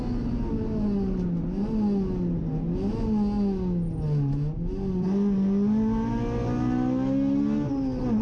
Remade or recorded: recorded